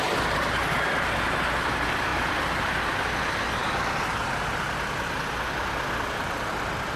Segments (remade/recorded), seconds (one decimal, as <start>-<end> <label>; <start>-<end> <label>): 0.0-7.0 recorded